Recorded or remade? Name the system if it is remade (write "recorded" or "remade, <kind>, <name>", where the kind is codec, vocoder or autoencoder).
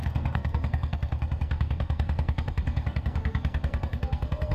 remade, codec, SNAC